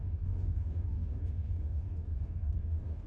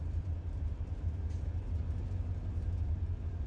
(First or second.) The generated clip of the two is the first